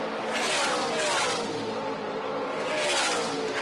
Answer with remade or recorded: recorded